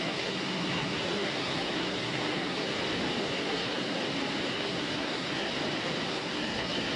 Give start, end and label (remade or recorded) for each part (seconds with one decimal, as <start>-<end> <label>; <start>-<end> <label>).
0.0-2.7 remade; 2.7-3.2 recorded; 3.2-4.0 remade; 4.0-4.5 recorded; 4.5-5.5 remade; 5.5-6.1 recorded; 6.1-7.0 remade